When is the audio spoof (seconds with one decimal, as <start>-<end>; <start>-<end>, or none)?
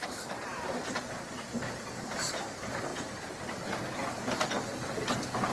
0.0-2.9